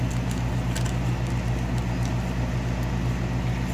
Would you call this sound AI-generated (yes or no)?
no